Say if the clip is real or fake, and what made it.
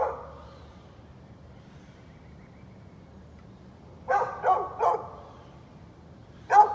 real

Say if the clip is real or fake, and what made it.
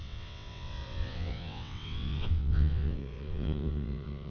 fake, vocoder, WaveNeXt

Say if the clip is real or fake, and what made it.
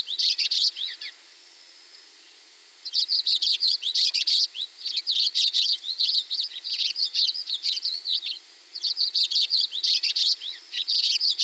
fake, vocoder, WaveNeXt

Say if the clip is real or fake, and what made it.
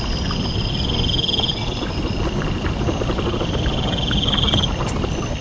real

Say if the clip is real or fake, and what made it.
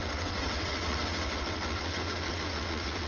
fake, vocoder, WaveNeXt